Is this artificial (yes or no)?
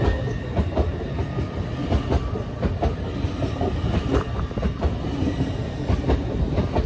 no